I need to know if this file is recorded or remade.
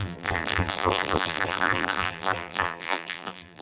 remade